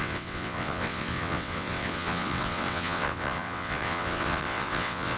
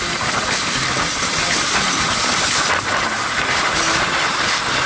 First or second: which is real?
second